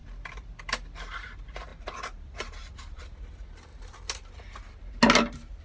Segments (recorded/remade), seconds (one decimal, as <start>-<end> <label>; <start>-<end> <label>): 0.0-1.7 recorded; 1.7-3.0 remade; 3.0-3.7 recorded; 3.7-4.7 remade; 4.7-5.6 recorded